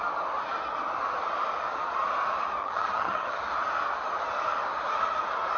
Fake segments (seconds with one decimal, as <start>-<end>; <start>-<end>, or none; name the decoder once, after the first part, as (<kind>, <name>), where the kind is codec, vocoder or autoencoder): 2.6-3.4 (vocoder, HiFi-GAN)